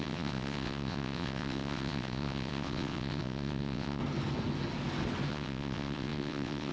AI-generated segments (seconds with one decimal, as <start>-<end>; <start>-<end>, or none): 0.0-4.0; 5.3-6.7